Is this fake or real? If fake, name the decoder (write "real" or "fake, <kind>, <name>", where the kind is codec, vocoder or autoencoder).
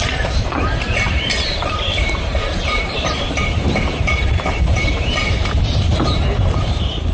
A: fake, vocoder, BigVGAN v2